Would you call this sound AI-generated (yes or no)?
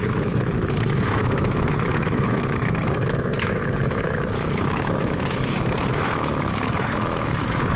yes